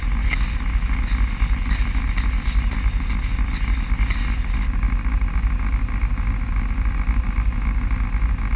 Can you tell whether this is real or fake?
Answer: real